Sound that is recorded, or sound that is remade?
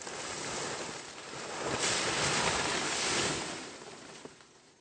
recorded